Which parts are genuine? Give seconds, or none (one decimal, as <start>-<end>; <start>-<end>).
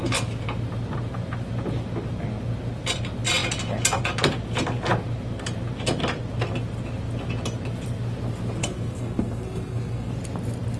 0.0-8.6; 10.1-10.8